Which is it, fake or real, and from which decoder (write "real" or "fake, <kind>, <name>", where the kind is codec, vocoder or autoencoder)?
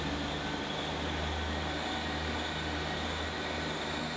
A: real